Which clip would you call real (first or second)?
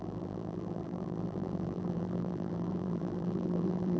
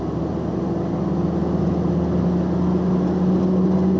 second